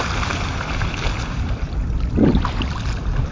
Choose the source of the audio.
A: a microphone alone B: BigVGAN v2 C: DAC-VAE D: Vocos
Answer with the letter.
B